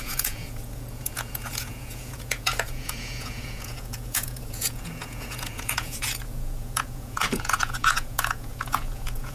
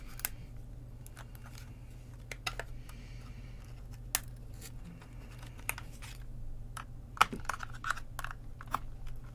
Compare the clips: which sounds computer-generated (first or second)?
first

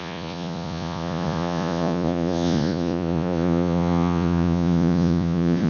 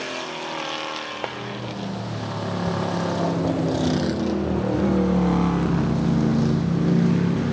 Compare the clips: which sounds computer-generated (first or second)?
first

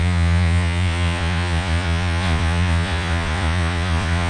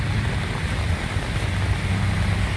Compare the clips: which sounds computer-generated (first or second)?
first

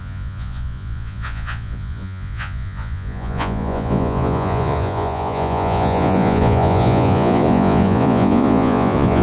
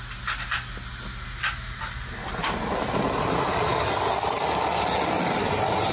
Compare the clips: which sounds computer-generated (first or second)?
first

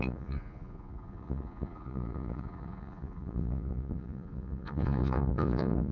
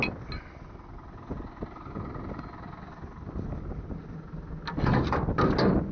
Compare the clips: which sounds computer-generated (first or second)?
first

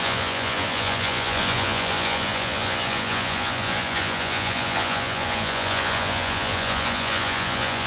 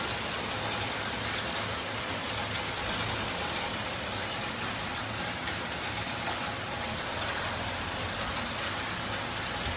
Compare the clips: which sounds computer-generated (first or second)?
first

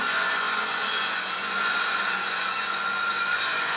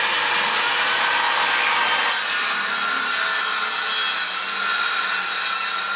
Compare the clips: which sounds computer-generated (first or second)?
first